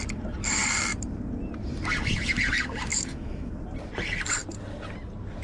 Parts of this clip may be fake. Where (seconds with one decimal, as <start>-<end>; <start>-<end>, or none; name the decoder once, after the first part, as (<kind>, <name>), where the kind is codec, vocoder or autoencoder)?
2.9-3.5 (autoencoder, DAC-VAE)